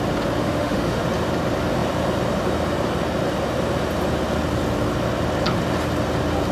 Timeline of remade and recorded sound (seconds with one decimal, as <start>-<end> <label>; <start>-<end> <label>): 0.0-0.4 recorded; 0.4-1.0 remade; 1.0-6.5 recorded